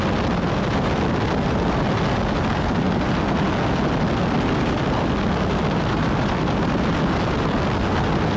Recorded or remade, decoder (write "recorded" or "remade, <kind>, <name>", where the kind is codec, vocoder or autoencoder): recorded